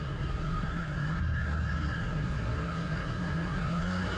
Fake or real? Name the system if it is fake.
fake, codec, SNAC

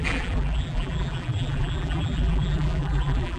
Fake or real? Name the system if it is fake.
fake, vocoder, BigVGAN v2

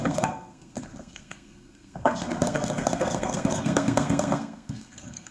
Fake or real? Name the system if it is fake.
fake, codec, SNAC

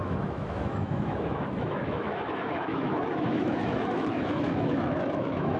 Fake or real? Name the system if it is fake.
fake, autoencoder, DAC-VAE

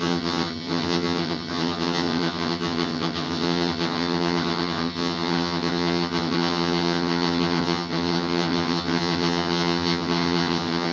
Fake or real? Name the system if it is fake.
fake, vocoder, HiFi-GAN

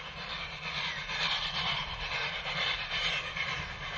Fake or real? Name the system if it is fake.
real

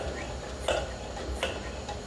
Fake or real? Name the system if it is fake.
real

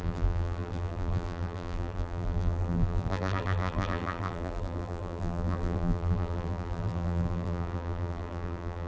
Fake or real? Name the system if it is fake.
fake, vocoder, BigVGAN v2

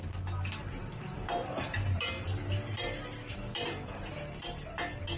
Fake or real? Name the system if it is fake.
real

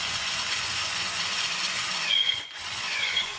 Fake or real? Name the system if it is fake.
fake, vocoder, Vocos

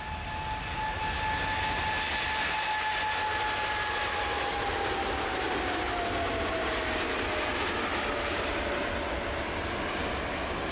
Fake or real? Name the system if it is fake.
real